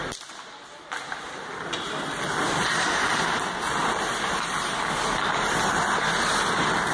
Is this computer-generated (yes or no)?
no